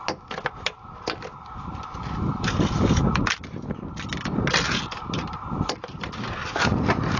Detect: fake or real real